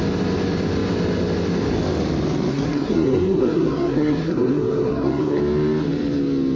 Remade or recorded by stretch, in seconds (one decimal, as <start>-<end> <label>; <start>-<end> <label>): 0.0-2.5 recorded; 2.5-5.4 remade; 5.4-6.6 recorded